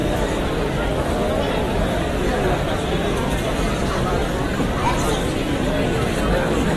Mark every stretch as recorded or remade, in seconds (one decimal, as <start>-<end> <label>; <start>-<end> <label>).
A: 0.0-1.0 recorded; 1.0-4.2 remade; 4.2-6.3 recorded; 6.3-6.8 remade